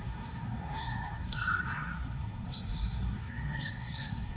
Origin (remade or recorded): remade